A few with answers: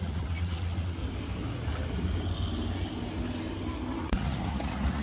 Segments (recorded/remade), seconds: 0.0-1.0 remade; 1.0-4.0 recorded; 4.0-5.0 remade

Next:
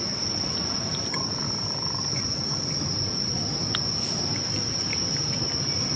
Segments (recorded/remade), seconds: 0.0-6.0 recorded

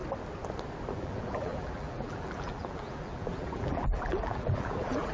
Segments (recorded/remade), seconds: 0.0-0.9 recorded; 0.9-5.1 remade

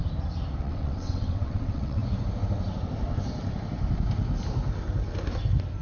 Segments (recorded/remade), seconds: 0.0-0.6 recorded; 0.6-2.0 remade; 2.0-5.8 recorded